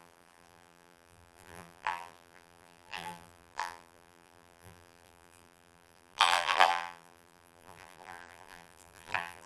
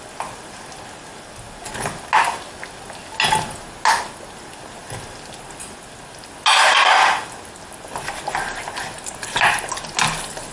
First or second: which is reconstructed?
first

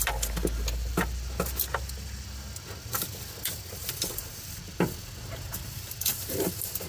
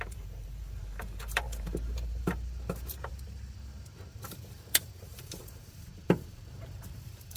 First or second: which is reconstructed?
second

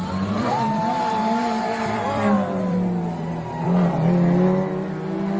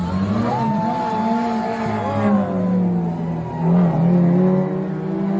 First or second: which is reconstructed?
first